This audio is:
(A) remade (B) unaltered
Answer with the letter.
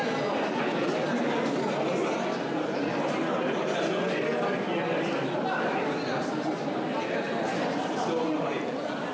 B